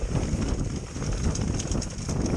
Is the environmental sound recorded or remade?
recorded